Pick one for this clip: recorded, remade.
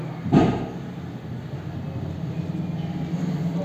recorded